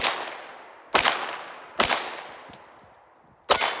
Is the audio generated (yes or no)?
no